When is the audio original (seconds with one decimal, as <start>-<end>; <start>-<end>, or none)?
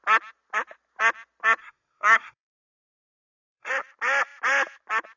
0.0-1.6; 3.7-5.2